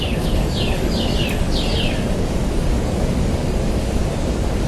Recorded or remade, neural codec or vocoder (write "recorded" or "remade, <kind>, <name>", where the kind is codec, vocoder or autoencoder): remade, codec, DAC